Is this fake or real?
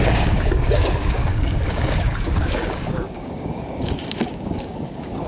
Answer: fake